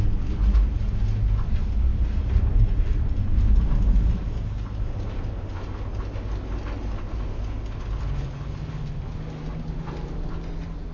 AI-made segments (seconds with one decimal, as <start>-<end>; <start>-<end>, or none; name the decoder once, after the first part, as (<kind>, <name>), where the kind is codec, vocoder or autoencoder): 1.9-4.5 (vocoder, BigVGAN v2)